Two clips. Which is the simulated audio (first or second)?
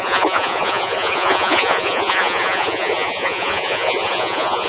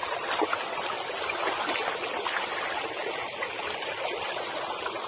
first